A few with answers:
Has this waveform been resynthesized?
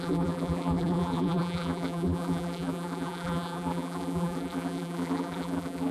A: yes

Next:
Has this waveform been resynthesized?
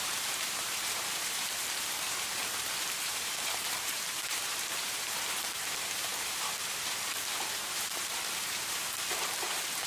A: yes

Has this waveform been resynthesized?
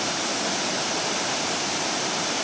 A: yes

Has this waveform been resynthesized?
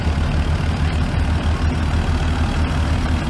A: no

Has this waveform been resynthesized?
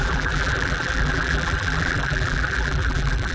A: yes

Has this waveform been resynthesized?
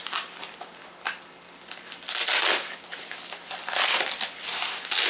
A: no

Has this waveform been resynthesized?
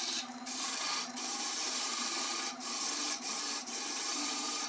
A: yes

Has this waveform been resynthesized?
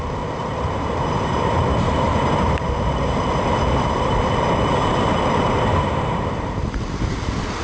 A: yes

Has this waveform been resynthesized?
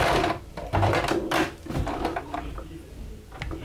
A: yes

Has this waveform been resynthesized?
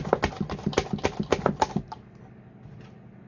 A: no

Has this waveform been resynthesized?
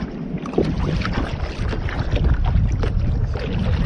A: no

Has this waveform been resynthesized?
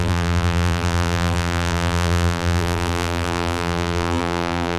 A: yes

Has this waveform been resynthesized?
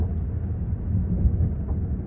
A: no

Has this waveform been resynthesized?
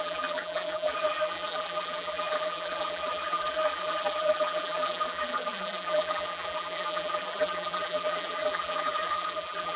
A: yes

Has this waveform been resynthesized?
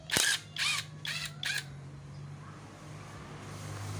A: no